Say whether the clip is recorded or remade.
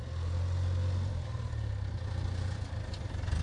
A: recorded